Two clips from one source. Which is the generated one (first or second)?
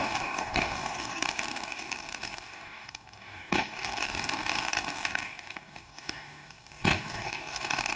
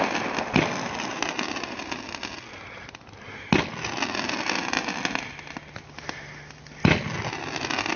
first